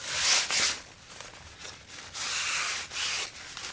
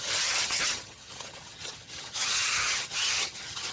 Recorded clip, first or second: first